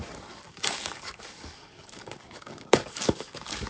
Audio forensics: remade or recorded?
remade